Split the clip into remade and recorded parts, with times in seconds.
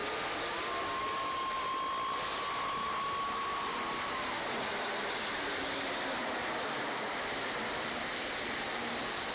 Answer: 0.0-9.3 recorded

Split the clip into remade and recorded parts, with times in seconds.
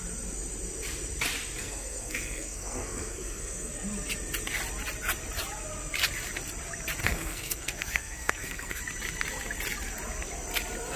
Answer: 0.0-1.6 recorded; 1.6-3.7 remade; 3.7-7.0 recorded; 7.0-8.8 remade; 8.8-11.0 recorded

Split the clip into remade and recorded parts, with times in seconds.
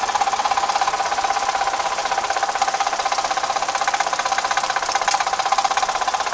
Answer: 0.0-2.0 recorded; 2.0-5.8 remade; 5.8-6.3 recorded